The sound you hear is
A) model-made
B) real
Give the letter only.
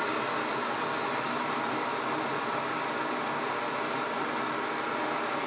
B